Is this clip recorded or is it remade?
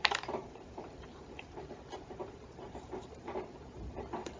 remade